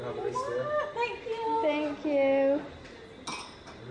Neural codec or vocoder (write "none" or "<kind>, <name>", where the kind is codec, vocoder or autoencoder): none